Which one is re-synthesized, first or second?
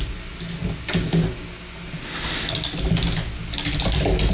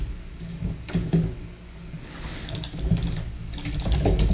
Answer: second